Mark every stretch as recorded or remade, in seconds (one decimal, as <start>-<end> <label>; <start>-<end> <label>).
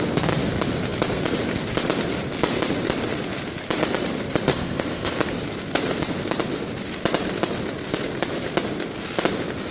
0.0-4.5 recorded; 4.5-5.2 remade; 5.2-9.7 recorded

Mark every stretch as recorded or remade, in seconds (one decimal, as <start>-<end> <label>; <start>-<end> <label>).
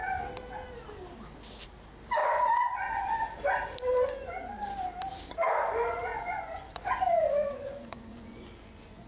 0.0-2.2 recorded; 2.2-3.4 remade; 3.4-6.1 recorded; 6.1-9.1 remade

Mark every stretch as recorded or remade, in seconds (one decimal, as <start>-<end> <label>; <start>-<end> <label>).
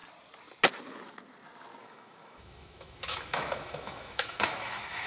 0.0-1.8 recorded; 1.8-5.1 remade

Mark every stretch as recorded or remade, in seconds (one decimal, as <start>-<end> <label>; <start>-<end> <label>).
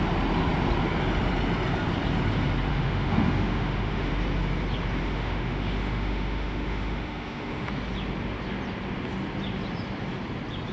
0.0-2.7 recorded; 2.7-4.1 remade; 4.1-5.0 recorded; 5.0-7.7 remade; 7.7-10.7 recorded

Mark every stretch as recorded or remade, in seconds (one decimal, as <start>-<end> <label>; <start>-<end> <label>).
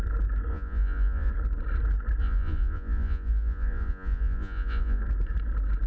0.0-0.5 recorded; 0.5-1.3 remade; 1.3-2.2 recorded; 2.2-5.0 remade; 5.0-5.9 recorded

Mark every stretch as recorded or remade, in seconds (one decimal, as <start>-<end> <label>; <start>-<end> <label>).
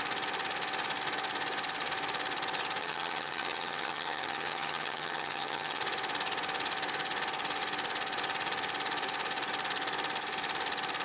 0.0-2.8 recorded; 2.8-5.8 remade; 5.8-11.0 recorded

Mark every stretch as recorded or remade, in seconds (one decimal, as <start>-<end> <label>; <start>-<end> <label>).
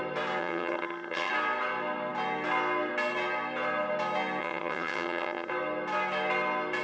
0.0-0.4 recorded; 0.4-1.3 remade; 1.3-4.4 recorded; 4.4-5.5 remade; 5.5-6.8 recorded